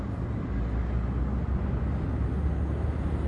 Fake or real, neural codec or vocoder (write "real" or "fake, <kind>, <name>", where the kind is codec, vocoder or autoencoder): real